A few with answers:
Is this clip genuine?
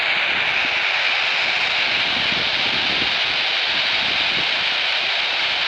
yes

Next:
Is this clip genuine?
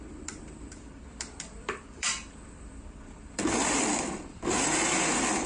no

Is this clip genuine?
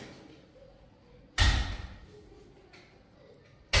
yes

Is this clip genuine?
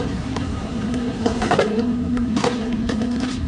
no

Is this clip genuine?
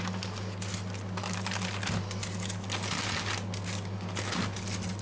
yes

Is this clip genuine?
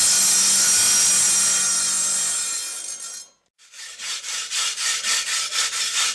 yes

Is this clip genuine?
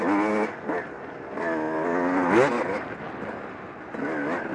yes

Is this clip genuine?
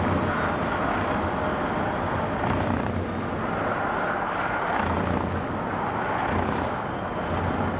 yes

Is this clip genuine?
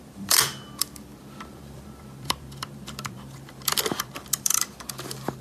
no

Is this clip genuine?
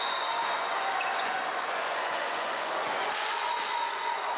no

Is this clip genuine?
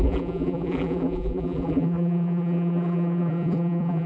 no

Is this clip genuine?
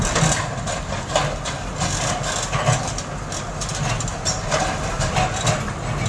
yes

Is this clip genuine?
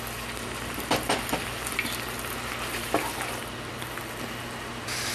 yes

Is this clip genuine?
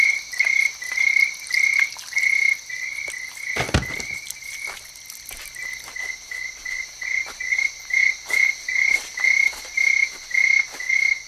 yes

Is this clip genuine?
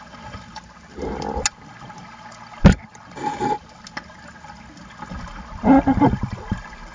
yes